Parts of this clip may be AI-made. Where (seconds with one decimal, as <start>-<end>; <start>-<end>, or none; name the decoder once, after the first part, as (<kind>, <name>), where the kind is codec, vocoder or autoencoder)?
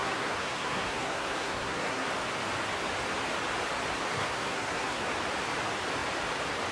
0.0-2.1 (codec, SNAC); 4.1-5.0